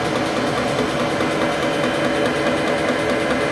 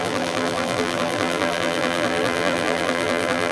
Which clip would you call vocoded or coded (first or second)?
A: second